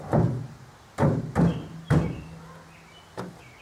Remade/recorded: recorded